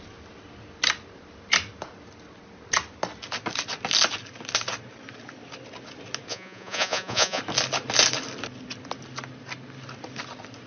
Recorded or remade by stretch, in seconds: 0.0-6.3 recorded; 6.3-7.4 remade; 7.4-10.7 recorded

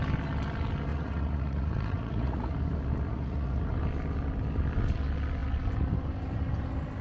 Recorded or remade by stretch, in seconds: 0.0-0.9 recorded; 0.9-2.5 remade; 2.5-3.1 recorded; 3.1-3.7 remade; 3.7-7.0 recorded